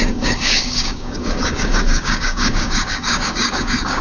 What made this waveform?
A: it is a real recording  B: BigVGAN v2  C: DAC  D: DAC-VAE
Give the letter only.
C